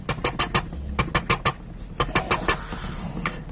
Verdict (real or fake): real